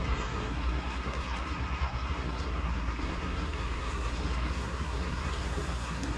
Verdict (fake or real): fake